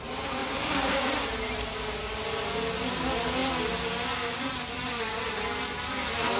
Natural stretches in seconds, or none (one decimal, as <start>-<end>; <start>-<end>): 0.0-0.4; 1.1-6.4